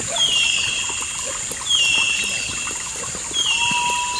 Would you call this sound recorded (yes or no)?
yes